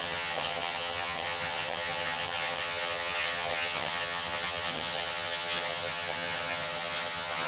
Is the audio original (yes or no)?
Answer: no